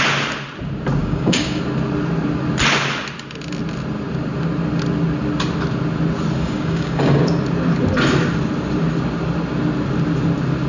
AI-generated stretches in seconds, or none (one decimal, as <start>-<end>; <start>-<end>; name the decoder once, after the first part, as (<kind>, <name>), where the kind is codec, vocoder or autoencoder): 1.0-1.6 (codec, DAC); 6.4-7.2